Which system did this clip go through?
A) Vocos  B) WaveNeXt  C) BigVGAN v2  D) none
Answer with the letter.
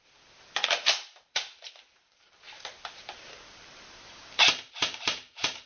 C